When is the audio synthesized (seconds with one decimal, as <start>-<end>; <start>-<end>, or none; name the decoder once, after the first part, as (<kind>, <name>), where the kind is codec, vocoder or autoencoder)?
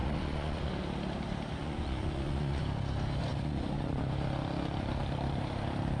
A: 0.0-0.7 (vocoder, Vocos); 1.6-2.6; 3.3-4.0